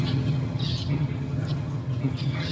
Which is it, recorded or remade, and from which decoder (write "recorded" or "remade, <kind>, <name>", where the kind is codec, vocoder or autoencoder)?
remade, vocoder, HiFi-GAN